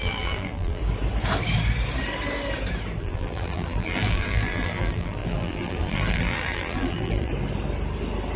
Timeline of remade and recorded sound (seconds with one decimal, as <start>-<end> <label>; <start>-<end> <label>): 0.0-0.8 remade; 0.8-3.0 recorded; 3.0-7.3 remade; 7.3-8.4 recorded